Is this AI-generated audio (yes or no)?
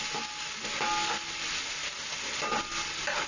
no